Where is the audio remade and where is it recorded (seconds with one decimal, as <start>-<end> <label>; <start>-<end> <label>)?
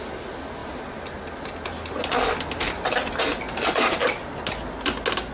0.0-5.3 recorded